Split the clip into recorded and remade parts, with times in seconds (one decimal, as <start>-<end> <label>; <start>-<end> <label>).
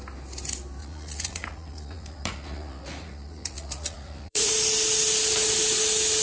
0.0-0.8 recorded; 0.8-4.5 remade; 4.5-6.2 recorded